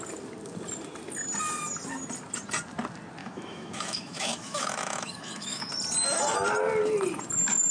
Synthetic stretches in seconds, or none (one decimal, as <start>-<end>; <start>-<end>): 3.2-5.7